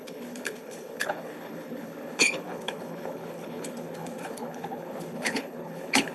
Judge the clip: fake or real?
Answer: fake